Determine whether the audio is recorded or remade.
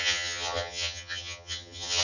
remade